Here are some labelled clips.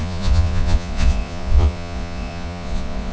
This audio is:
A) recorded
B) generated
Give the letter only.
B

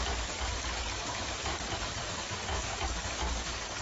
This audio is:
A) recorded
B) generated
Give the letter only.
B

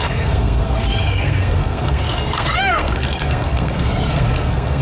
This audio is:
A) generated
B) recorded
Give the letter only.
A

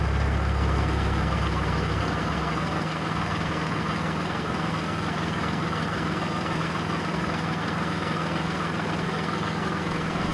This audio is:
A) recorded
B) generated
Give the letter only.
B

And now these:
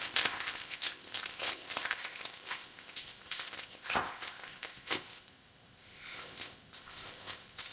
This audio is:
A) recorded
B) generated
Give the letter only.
B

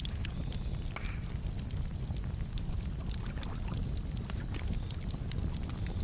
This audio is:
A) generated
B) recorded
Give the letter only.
B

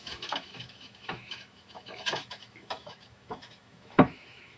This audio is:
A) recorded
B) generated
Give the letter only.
B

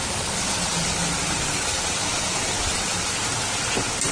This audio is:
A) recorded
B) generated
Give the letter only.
A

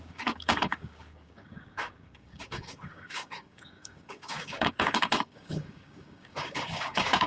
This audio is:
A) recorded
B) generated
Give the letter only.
B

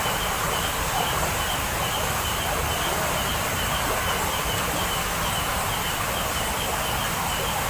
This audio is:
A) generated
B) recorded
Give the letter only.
B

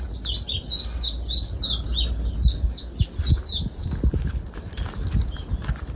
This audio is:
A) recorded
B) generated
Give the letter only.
A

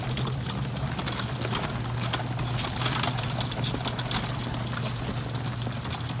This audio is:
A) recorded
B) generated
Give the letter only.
A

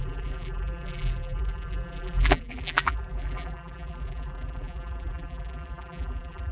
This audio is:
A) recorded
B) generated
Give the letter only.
B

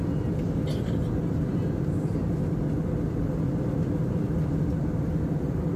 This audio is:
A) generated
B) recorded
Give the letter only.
B